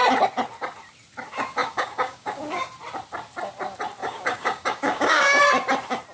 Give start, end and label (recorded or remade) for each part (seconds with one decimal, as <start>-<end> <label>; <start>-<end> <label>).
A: 0.0-1.6 recorded; 1.6-2.4 remade; 2.4-4.0 recorded; 4.0-5.4 remade; 5.4-6.1 recorded